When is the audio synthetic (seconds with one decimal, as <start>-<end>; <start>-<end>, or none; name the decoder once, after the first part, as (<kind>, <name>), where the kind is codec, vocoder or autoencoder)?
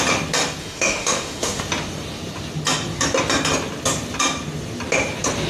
0.6-1.6 (autoencoder, DAC-VAE)